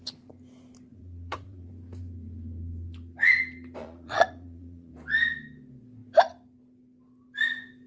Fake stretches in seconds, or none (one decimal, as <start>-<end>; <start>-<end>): 0.9-1.7; 3.8-4.9